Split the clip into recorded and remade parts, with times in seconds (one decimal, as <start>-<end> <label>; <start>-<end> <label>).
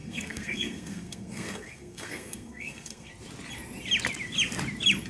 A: 0.0-3.1 remade; 3.1-5.1 recorded